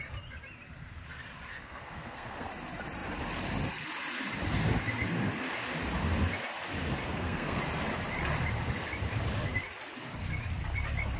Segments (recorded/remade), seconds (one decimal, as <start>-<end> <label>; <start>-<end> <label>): 0.0-1.5 recorded; 1.5-2.5 remade; 2.5-7.0 recorded; 7.0-7.6 remade; 7.6-11.2 recorded